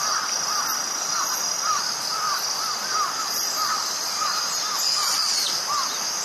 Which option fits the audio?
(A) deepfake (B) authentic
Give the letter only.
B